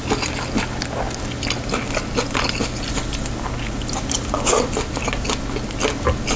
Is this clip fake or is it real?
real